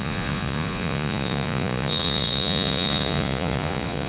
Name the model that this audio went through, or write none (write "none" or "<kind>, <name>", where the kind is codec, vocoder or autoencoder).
vocoder, Vocos